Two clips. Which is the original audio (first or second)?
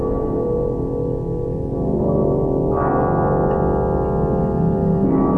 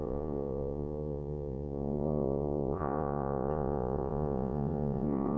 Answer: first